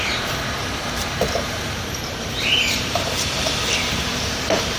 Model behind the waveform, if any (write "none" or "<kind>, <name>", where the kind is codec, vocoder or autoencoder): vocoder, BigVGAN v2